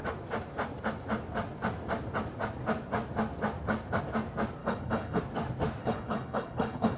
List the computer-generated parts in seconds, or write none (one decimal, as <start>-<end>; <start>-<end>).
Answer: 4.6-5.2; 5.8-7.0